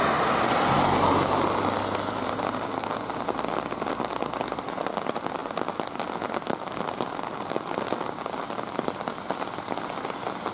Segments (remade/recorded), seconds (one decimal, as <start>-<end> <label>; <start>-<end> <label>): 0.0-10.5 recorded